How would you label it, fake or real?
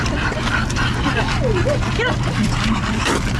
fake